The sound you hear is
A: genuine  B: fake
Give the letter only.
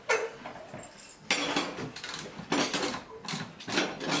A